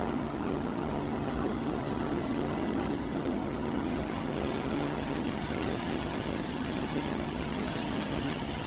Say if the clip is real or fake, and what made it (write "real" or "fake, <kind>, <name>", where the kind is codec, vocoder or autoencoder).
fake, vocoder, HiFi-GAN